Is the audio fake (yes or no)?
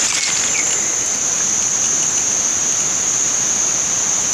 no